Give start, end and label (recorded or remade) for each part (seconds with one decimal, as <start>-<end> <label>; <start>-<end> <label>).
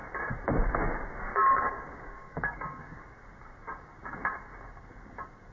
0.0-1.3 recorded; 1.3-3.0 remade; 3.0-5.5 recorded